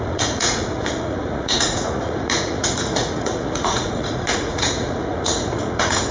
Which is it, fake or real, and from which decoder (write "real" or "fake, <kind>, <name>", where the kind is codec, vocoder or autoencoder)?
fake, vocoder, Vocos